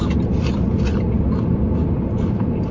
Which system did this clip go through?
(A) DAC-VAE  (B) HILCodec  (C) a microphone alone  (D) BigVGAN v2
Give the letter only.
C